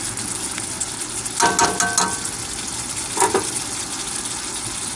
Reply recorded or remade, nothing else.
recorded